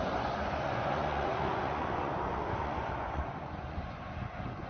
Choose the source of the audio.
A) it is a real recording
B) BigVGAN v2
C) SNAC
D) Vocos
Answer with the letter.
D